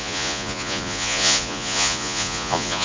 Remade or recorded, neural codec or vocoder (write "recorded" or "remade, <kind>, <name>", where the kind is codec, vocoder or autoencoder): remade, vocoder, Vocos